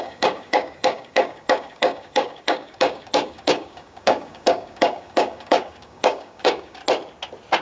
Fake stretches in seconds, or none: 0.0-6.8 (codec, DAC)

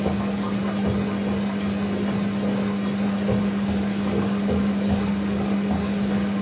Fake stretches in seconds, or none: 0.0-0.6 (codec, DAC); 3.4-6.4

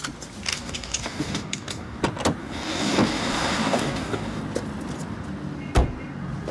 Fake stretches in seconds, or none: 0.5-2.0 (codec, DAC); 2.4-4.4

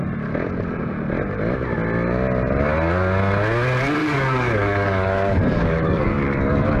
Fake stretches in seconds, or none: 4.0-6.8 (codec, DAC)

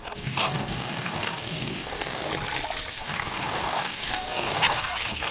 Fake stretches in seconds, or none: 0.0-2.3 (codec, DAC); 2.9-5.3